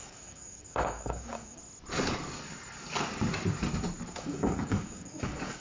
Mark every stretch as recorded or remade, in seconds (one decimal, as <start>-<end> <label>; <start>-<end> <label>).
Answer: 0.0-1.6 remade; 1.6-4.1 recorded; 4.1-5.6 remade